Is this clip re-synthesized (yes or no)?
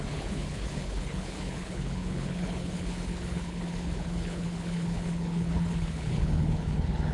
yes